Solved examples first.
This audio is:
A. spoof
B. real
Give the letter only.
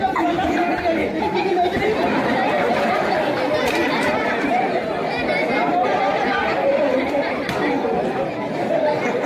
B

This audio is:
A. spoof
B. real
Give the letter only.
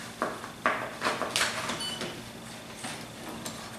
B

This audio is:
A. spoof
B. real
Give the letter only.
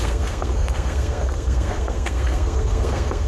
A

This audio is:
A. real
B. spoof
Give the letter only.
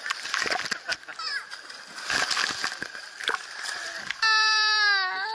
A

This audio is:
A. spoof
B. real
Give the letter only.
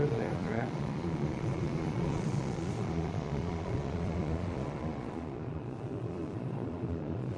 A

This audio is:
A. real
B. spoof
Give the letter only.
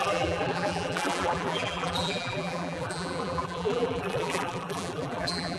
B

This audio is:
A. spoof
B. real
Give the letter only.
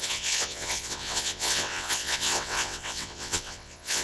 A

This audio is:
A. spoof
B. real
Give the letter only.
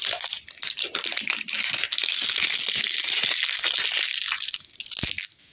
B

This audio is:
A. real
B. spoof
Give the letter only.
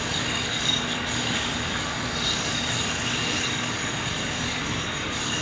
B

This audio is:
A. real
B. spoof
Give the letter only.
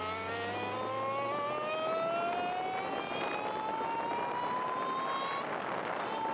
A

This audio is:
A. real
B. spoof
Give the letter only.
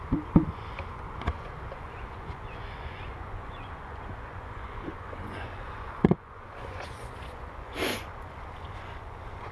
B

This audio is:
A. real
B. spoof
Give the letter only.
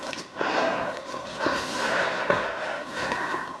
B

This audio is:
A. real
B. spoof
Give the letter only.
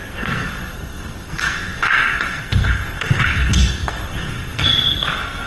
B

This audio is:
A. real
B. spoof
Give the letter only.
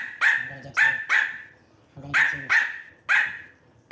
A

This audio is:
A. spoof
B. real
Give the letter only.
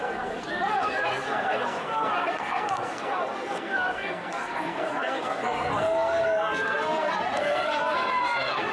A